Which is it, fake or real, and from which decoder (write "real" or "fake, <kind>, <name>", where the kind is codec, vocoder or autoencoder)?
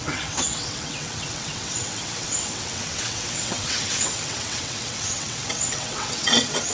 fake, vocoder, WaveNeXt